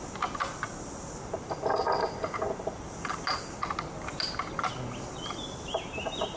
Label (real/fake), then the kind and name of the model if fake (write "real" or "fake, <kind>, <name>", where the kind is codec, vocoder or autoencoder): real